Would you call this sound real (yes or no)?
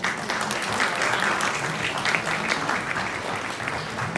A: yes